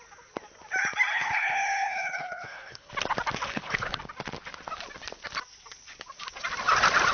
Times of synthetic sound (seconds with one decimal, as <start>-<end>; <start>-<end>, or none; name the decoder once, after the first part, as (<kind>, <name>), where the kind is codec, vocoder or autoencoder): 1.1-2.9 (codec, HILCodec); 3.5-4.0